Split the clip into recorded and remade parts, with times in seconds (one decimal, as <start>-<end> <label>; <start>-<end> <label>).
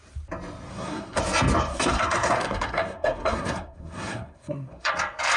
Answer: 0.0-0.7 recorded; 0.7-1.2 remade; 1.2-1.7 recorded; 1.7-4.9 remade; 4.9-5.4 recorded